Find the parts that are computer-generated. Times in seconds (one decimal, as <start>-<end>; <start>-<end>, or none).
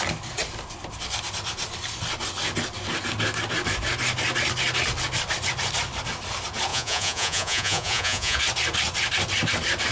6.7-8.4